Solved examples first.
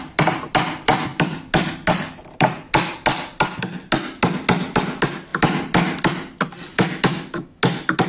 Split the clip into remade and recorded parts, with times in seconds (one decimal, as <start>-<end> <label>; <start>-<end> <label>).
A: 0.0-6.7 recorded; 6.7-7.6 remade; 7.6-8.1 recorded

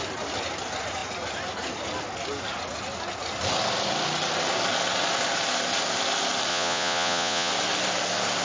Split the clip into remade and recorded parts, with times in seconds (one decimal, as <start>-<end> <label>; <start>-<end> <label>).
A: 0.0-6.5 recorded; 6.5-7.5 remade; 7.5-8.4 recorded

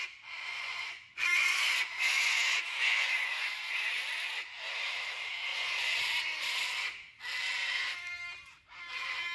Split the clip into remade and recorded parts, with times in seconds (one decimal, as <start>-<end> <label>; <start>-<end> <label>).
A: 0.0-0.5 recorded; 0.5-3.9 remade; 3.9-5.5 recorded; 5.5-6.0 remade; 6.0-9.3 recorded